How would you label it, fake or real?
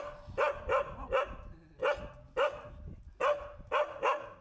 real